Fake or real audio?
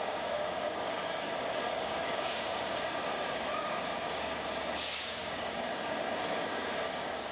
fake